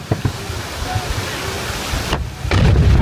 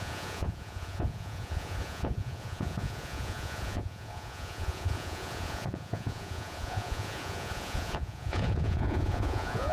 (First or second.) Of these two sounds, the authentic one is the first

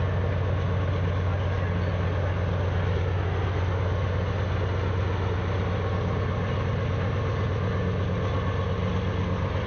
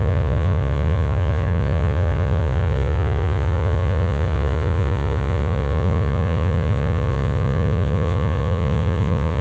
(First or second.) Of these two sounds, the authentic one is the first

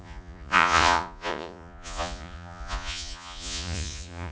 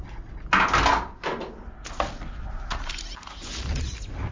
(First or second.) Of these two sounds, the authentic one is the second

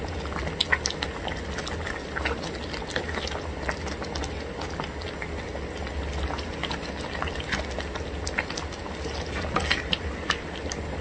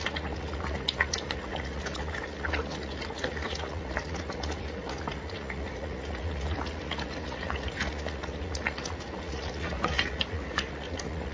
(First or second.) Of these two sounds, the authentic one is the first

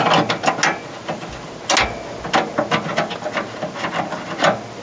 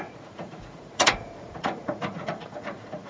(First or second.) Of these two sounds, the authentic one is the first